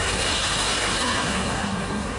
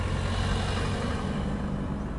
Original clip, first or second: second